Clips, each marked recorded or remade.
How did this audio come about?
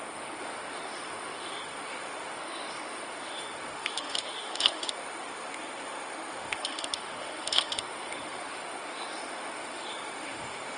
remade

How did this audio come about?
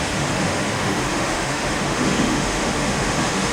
remade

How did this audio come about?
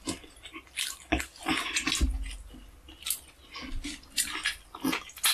recorded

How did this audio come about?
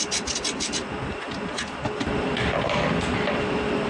recorded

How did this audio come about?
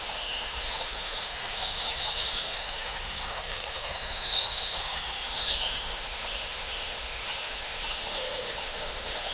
remade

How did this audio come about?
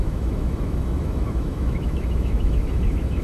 remade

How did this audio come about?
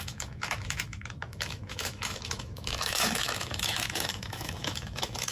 remade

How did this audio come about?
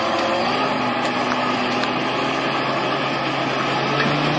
recorded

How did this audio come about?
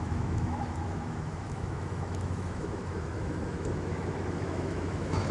remade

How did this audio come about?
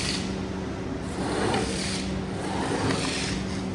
recorded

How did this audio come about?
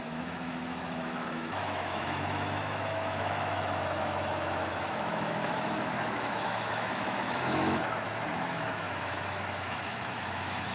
remade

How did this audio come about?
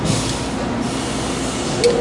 recorded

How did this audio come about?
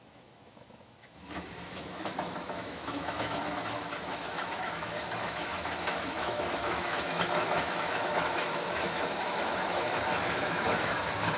remade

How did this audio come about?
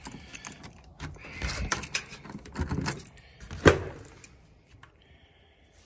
recorded